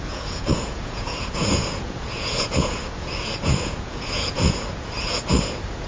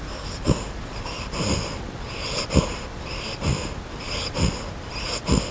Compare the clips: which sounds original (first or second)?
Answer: second